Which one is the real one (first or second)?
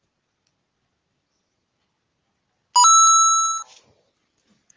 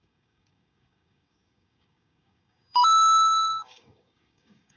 first